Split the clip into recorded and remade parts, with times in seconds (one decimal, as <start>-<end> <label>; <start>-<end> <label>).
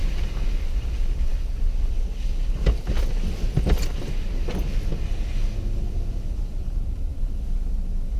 0.0-8.2 recorded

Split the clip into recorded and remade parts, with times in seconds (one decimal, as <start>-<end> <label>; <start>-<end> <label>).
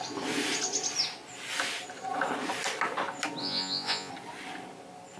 0.0-3.4 recorded; 3.4-4.1 remade; 4.1-5.2 recorded